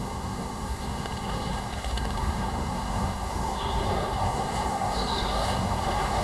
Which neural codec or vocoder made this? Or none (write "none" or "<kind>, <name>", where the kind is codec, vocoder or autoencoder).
codec, SNAC